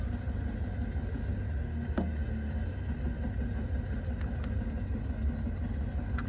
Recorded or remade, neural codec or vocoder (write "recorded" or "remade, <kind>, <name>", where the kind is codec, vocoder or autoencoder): recorded